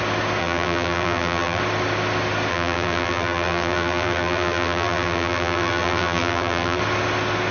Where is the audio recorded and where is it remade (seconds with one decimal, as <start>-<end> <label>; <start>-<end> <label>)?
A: 0.0-0.4 recorded; 0.4-1.6 remade; 1.6-2.5 recorded; 2.5-6.8 remade; 6.8-7.5 recorded